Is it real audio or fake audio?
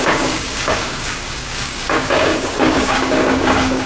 fake